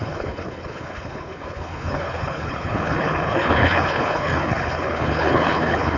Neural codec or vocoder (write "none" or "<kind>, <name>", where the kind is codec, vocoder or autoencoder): codec, HILCodec